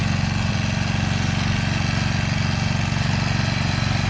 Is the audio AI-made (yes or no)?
no